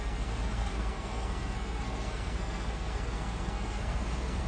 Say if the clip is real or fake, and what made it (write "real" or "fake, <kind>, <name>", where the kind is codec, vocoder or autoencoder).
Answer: fake, codec, SNAC